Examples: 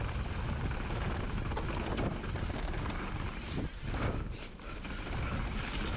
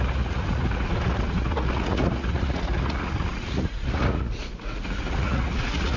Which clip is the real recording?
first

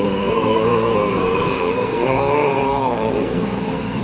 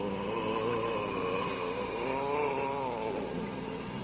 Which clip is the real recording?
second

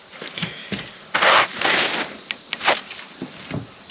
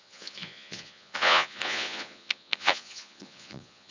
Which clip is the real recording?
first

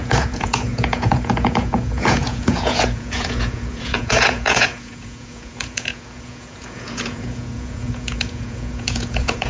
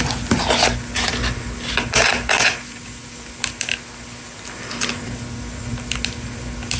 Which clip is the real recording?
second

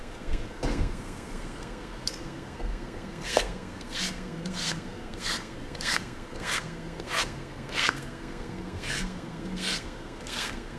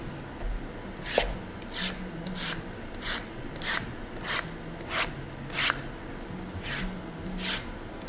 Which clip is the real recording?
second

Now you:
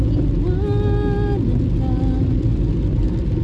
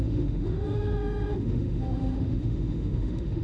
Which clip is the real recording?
first